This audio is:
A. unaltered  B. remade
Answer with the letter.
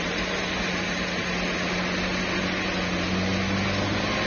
A